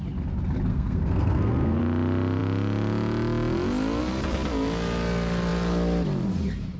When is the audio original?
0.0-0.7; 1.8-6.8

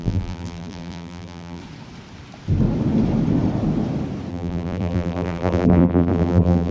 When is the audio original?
1.6-4.3

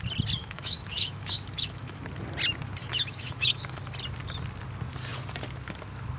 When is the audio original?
0.0-0.4; 2.0-2.8; 3.8-6.2

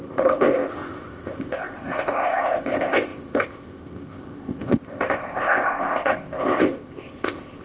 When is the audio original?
none

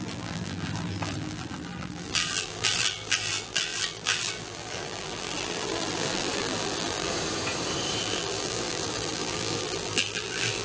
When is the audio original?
7.1-8.0

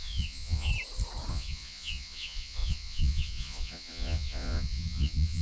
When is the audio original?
0.7-1.3